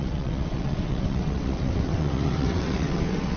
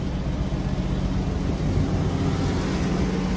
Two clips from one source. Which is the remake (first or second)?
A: first